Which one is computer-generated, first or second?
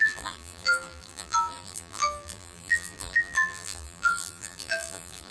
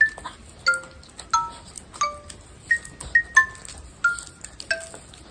first